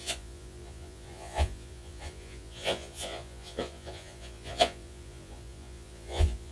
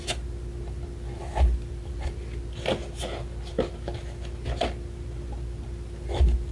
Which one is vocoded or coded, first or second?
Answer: first